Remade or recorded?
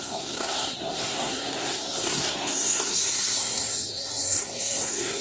remade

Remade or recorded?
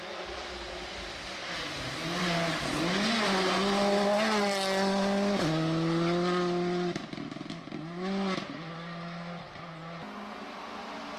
recorded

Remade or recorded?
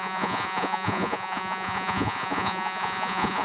remade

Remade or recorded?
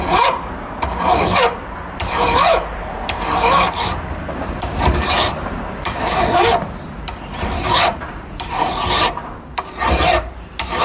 remade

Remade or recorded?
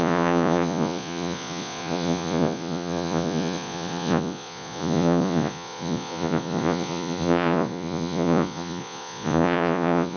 remade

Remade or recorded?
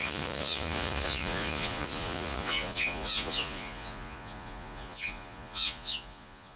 remade